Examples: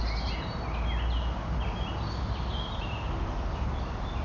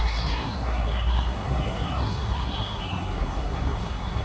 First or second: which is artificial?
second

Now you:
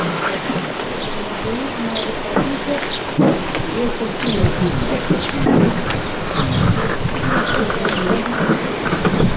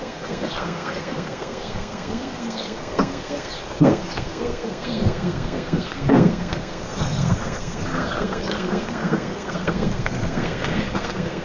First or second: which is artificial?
second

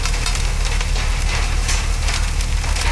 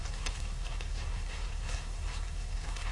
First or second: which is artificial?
second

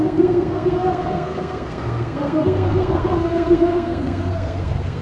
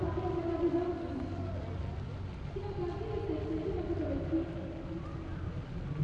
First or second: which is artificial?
first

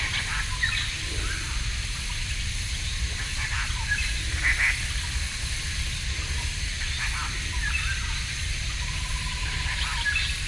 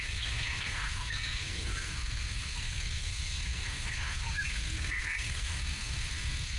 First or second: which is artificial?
second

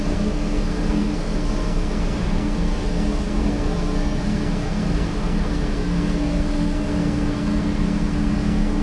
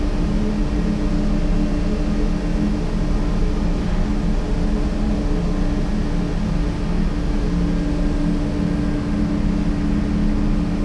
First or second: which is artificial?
first